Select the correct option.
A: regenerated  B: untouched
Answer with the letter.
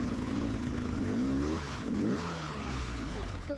A